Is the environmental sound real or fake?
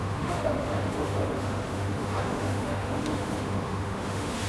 fake